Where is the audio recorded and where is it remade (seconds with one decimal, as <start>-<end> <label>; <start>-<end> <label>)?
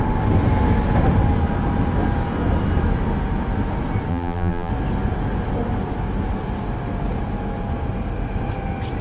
0.0-4.1 recorded; 4.1-4.7 remade; 4.7-9.0 recorded